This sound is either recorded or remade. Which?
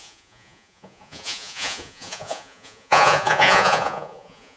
remade